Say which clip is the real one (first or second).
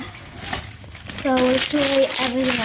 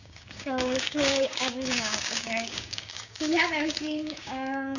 first